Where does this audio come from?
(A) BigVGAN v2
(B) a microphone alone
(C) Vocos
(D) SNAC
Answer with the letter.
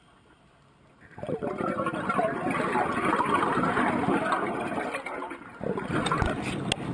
B